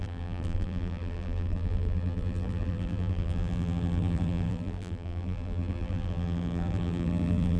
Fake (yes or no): yes